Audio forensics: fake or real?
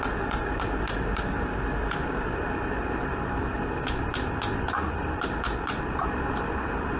real